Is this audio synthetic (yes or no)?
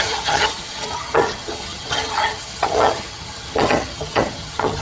yes